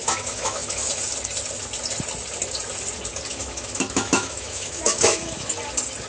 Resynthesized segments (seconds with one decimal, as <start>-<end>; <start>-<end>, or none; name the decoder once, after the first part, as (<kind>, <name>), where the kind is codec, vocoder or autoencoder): 0.0-0.9 (autoencoder, DAC-VAE); 3.3-5.5